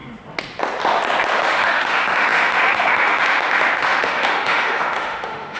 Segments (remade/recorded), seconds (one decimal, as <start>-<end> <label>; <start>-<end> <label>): 0.0-1.4 recorded; 1.4-5.6 remade

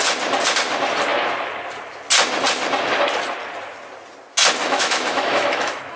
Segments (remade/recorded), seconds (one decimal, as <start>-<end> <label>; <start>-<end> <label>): 0.0-4.6 recorded; 4.6-6.0 remade